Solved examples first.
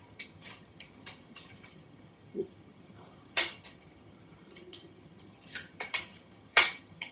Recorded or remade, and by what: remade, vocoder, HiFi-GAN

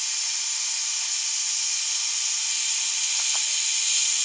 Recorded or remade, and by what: recorded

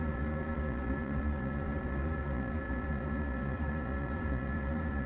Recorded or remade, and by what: remade, vocoder, Vocos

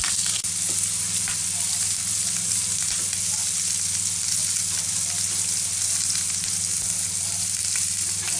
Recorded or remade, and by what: recorded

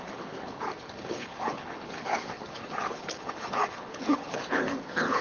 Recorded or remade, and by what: remade, codec, HILCodec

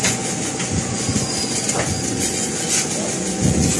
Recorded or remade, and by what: remade, vocoder, Vocos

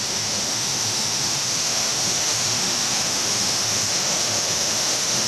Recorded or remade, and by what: remade, autoencoder, DAC-VAE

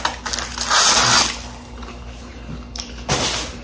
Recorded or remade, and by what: recorded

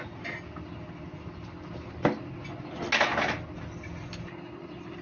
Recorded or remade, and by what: recorded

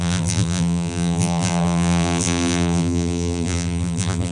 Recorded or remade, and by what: remade, vocoder, BigVGAN v2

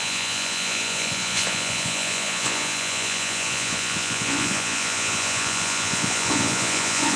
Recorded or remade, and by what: remade, vocoder, Vocos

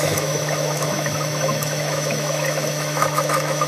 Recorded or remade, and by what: remade, autoencoder, DAC-VAE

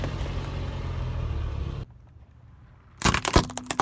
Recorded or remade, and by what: recorded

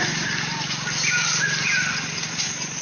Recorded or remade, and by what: recorded